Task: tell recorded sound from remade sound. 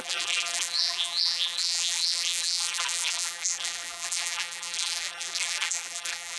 remade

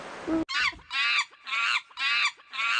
recorded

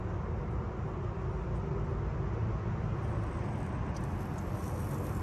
recorded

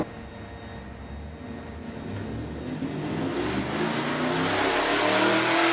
recorded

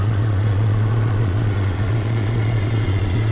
remade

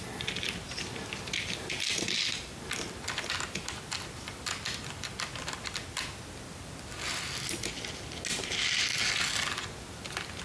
recorded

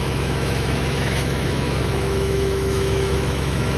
remade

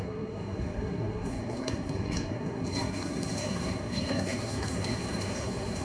remade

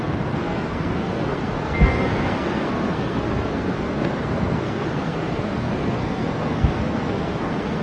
remade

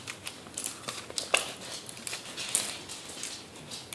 recorded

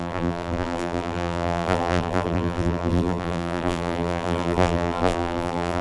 remade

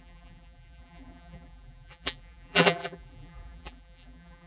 remade